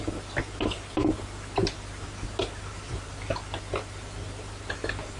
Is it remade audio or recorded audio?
recorded